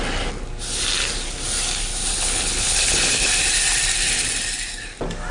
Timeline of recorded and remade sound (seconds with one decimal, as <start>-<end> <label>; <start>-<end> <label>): 0.0-2.1 recorded; 2.1-3.3 remade; 3.3-5.3 recorded

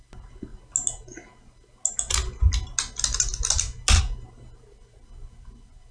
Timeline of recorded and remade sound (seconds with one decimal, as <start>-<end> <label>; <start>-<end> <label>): 0.0-5.9 recorded

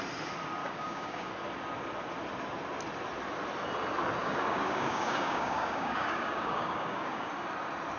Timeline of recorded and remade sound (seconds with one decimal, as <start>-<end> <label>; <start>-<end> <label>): 0.0-0.6 recorded; 0.6-1.3 remade; 1.3-4.2 recorded; 4.2-7.3 remade; 7.3-8.0 recorded

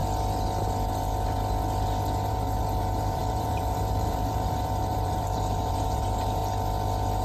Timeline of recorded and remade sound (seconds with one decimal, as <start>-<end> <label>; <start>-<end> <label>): 0.0-2.3 recorded; 2.3-6.4 remade; 6.4-7.2 recorded

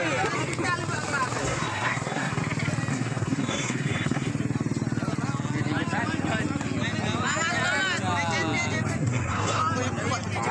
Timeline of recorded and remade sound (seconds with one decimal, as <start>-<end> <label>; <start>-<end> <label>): 0.0-1.4 recorded; 1.4-2.4 remade; 2.4-2.9 recorded; 2.9-4.3 remade; 4.3-9.0 recorded; 9.0-9.6 remade; 9.6-10.5 recorded